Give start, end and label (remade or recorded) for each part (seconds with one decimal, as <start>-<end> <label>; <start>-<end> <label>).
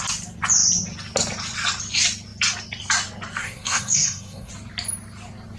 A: 0.0-3.4 recorded; 3.4-4.5 remade; 4.5-5.6 recorded